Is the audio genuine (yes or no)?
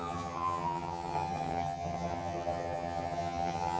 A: no